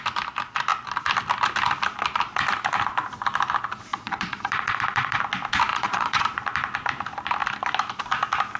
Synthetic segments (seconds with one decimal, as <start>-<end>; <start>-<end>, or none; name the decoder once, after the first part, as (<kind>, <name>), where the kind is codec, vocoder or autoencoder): 3.9-5.2 (vocoder, Vocos); 5.7-6.2

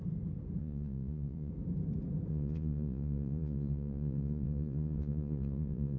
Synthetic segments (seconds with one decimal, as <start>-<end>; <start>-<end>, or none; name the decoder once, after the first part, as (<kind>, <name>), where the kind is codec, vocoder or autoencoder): 0.6-1.5 (vocoder, Vocos); 2.3-6.0

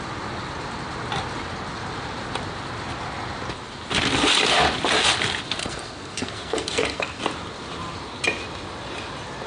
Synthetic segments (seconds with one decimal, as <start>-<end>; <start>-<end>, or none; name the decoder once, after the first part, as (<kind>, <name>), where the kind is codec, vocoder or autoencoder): 5.6-7.2 (codec, SNAC)

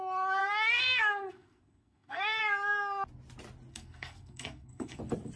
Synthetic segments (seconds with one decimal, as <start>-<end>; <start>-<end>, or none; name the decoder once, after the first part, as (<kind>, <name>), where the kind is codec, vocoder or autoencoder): 0.4-2.4 (codec, SNAC); 3.7-5.0

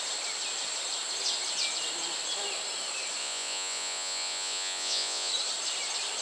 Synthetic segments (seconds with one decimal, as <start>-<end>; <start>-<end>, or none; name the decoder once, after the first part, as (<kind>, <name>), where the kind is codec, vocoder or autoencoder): 3.2-5.3 (vocoder, Vocos)

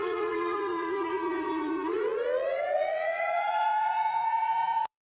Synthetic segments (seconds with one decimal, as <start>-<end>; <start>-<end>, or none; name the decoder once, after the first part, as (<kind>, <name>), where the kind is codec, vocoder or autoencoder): 0.0-5.0 (vocoder, Vocos)

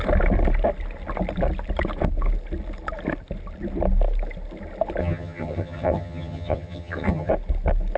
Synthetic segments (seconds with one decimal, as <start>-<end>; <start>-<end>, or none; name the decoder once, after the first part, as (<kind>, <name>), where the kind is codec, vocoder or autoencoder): 5.0-7.3 (vocoder, HiFi-GAN)

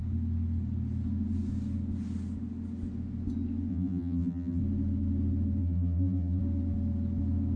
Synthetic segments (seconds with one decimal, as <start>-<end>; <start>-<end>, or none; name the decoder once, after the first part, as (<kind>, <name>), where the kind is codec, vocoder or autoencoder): 3.7-4.6 (vocoder, BigVGAN v2); 5.6-6.4